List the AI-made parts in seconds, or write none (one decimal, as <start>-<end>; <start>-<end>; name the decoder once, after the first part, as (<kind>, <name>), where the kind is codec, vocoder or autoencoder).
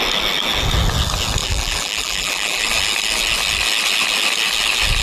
1.4-2.6 (vocoder, BigVGAN v2)